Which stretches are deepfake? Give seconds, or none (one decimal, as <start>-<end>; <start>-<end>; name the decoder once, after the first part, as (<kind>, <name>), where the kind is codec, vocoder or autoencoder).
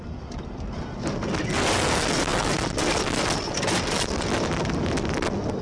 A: none